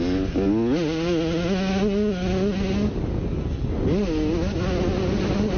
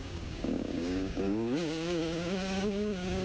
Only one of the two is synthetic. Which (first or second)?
second